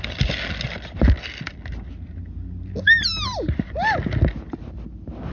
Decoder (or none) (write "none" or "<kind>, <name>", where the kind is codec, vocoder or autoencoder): none